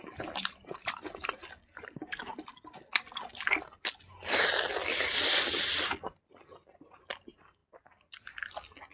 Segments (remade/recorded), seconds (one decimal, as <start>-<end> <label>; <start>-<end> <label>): 0.0-8.9 recorded